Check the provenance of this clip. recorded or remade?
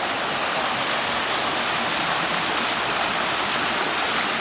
recorded